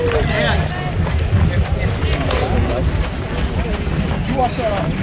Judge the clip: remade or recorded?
recorded